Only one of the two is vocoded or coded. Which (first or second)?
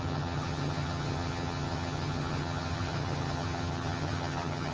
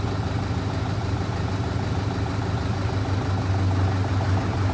first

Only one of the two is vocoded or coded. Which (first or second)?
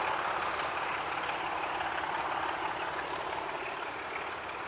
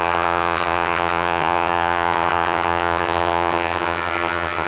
second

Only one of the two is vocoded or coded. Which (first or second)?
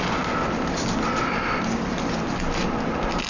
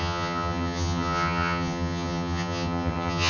second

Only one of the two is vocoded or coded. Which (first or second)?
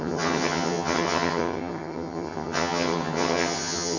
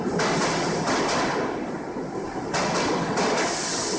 first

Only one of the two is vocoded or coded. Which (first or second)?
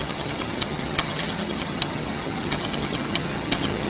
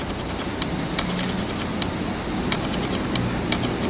first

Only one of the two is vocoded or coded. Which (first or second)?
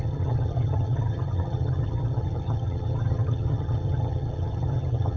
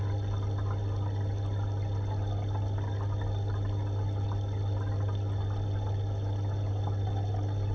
first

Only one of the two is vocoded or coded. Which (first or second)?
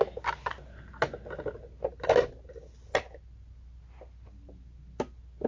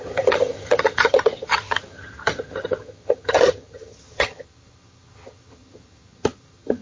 second